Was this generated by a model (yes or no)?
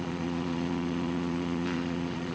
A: yes